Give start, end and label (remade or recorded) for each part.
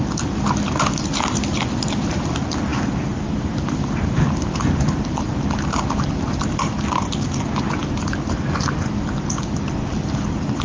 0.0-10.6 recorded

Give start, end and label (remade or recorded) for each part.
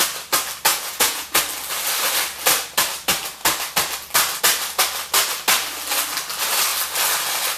0.0-0.7 recorded; 0.7-1.4 remade; 1.4-7.6 recorded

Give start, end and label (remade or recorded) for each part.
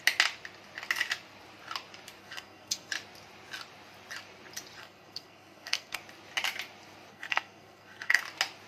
0.0-2.2 recorded; 2.2-2.9 remade; 2.9-4.8 recorded; 4.8-6.0 remade; 6.0-7.1 recorded; 7.1-8.2 remade; 8.2-8.7 recorded